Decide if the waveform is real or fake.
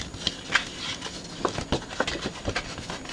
real